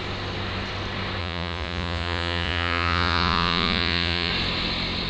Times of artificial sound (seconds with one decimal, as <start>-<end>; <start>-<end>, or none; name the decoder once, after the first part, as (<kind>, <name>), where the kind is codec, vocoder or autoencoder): 1.2-4.3 (vocoder, Vocos)